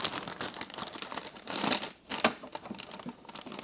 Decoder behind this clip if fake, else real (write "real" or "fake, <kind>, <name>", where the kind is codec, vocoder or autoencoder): real